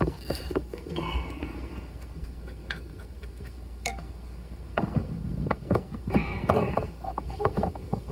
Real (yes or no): no